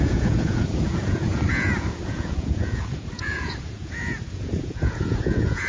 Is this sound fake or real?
fake